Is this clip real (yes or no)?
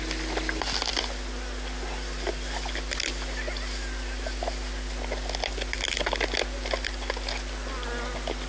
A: yes